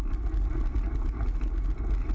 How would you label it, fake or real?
real